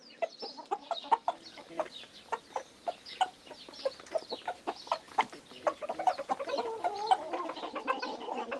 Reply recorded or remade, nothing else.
recorded